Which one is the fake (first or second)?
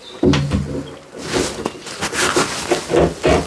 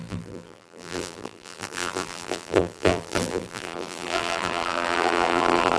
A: second